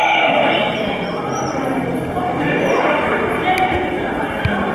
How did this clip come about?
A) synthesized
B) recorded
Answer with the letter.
B